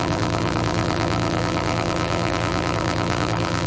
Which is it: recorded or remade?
remade